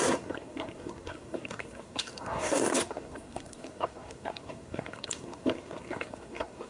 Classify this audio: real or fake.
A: fake